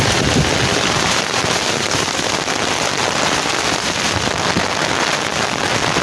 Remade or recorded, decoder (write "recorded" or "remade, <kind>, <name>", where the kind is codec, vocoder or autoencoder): recorded